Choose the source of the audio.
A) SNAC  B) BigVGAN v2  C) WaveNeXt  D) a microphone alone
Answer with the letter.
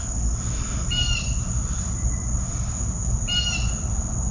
D